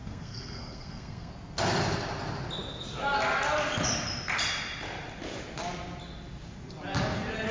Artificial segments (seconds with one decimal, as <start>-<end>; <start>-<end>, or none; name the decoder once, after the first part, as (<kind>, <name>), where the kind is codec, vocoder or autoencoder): 0.0-1.3 (codec, SNAC)